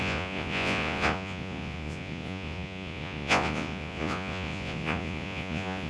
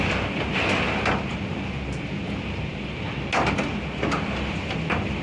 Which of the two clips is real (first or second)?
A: second